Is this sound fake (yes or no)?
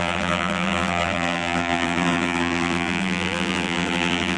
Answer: yes